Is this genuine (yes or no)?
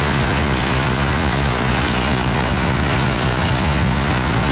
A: no